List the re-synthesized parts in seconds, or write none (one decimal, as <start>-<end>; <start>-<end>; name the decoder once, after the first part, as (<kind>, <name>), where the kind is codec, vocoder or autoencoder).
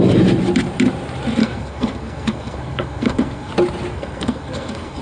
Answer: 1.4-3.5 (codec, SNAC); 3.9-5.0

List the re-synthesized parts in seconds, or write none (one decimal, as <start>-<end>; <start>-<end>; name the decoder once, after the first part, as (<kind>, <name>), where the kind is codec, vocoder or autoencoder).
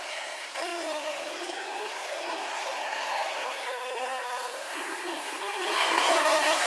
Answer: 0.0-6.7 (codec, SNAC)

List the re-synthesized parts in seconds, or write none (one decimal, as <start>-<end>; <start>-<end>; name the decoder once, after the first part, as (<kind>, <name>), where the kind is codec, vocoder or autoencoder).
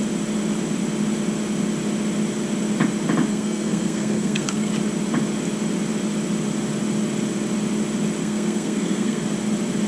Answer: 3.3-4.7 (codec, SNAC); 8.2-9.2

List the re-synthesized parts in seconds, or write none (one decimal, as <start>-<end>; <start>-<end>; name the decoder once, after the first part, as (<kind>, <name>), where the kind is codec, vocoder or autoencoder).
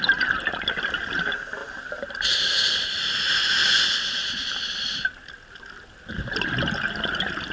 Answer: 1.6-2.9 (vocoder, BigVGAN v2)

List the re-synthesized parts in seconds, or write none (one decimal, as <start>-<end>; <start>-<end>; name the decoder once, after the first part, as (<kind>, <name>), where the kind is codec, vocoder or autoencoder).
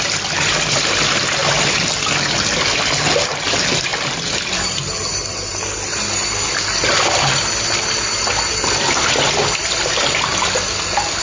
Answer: none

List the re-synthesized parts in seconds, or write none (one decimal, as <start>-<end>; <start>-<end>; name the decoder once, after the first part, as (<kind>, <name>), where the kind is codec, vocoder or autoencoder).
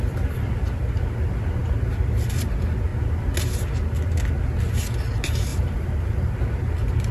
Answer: 5.5-6.3 (vocoder, BigVGAN v2)